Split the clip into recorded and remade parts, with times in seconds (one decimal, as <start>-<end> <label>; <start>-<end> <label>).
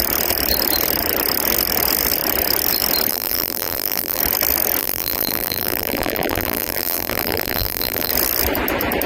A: 0.0-3.1 recorded; 3.1-4.2 remade; 4.2-4.8 recorded; 4.8-8.1 remade; 8.1-9.1 recorded